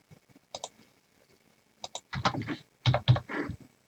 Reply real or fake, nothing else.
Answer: real